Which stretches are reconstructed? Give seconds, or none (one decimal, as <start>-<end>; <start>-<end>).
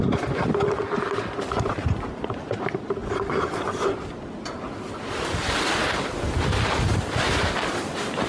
none